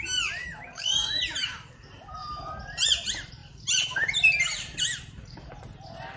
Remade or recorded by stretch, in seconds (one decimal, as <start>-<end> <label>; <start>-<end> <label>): 0.0-2.2 remade; 2.2-2.8 recorded; 2.8-6.2 remade